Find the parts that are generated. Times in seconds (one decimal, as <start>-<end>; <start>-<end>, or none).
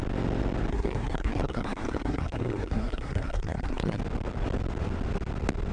0.7-4.0